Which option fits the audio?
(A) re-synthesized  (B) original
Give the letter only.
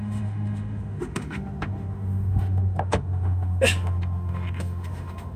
A